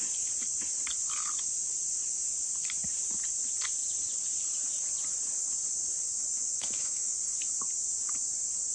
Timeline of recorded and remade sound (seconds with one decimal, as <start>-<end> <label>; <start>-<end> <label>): 0.0-6.1 recorded; 6.1-7.2 remade; 7.2-8.7 recorded